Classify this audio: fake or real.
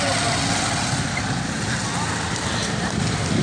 real